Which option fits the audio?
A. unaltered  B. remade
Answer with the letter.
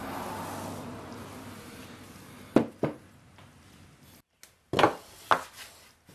A